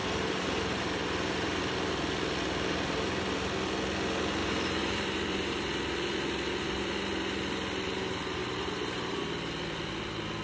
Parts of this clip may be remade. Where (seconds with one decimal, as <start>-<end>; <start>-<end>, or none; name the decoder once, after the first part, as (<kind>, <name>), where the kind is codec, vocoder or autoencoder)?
0.0-1.6 (vocoder, BigVGAN v2); 4.4-5.6; 8.4-9.2